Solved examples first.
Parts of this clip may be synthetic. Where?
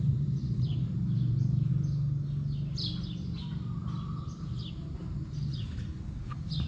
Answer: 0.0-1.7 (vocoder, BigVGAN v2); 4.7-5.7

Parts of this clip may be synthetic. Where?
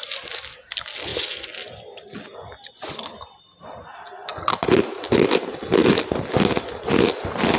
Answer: 1.1-3.4 (vocoder, BigVGAN v2); 5.8-7.1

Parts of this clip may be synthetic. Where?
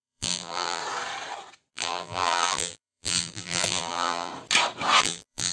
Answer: 0.0-0.8 (vocoder, BigVGAN v2); 1.7-4.3; 5.0-5.5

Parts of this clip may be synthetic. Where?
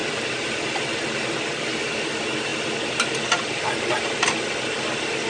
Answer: 2.5-5.3 (vocoder, BigVGAN v2)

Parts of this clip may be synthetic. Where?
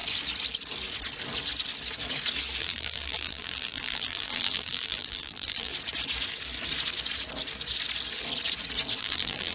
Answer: 2.6-5.7 (vocoder, BigVGAN v2); 9.0-9.5